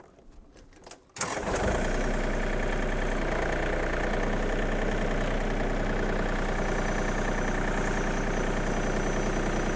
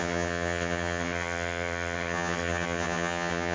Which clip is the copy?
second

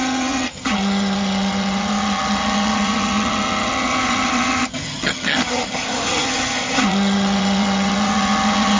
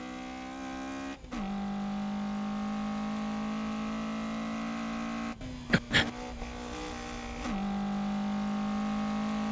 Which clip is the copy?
first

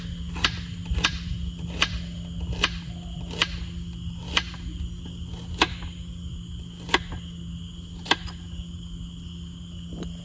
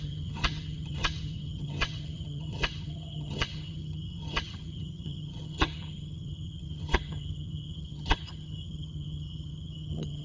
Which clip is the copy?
second